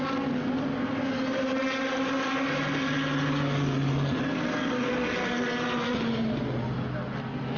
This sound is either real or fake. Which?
real